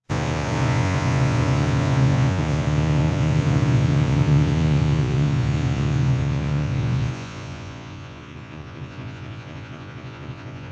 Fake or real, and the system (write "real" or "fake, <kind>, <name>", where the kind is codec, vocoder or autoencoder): fake, vocoder, Vocos